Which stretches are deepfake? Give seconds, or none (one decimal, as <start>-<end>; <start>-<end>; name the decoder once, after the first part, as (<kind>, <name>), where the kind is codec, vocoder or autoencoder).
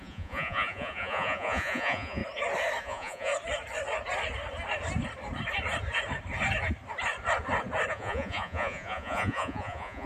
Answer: 0.0-2.2 (vocoder, Vocos); 2.8-3.3; 7.9-10.1